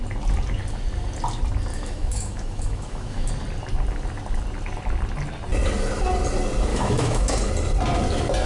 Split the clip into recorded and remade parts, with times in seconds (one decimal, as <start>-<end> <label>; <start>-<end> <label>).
0.0-1.7 recorded; 1.7-3.3 remade; 3.3-6.7 recorded; 6.7-7.5 remade; 7.5-8.5 recorded